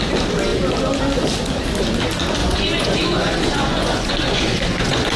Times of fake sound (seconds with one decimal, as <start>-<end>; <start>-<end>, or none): 2.4-5.2